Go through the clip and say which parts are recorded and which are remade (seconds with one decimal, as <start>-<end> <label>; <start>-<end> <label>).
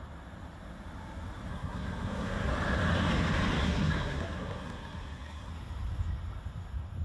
0.0-1.5 recorded; 1.5-2.5 remade; 2.5-3.6 recorded; 3.6-5.5 remade; 5.5-7.0 recorded